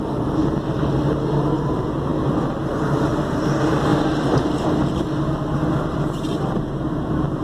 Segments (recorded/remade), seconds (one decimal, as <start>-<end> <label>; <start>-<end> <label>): 0.0-7.4 recorded